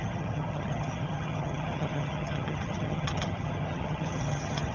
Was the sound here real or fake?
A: fake